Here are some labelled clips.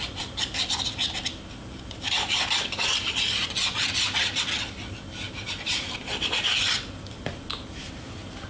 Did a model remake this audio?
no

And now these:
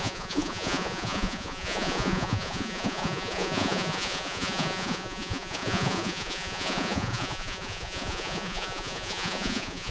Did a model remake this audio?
yes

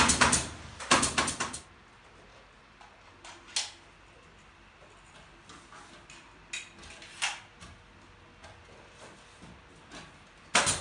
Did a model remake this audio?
no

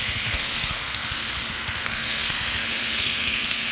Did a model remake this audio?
yes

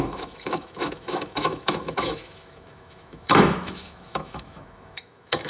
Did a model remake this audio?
yes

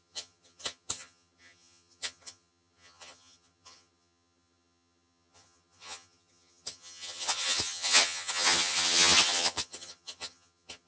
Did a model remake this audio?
yes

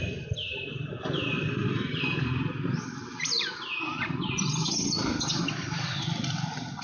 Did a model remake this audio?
yes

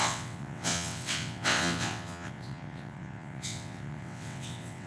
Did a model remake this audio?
yes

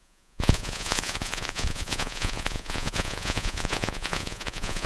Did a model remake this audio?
yes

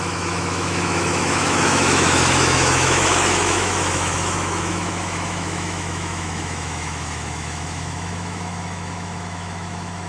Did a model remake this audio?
yes